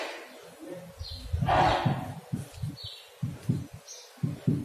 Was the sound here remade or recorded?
recorded